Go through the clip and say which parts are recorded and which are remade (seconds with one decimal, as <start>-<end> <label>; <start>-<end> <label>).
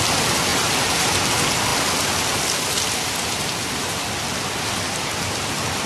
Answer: 0.0-0.5 recorded; 0.5-1.1 remade; 1.1-5.9 recorded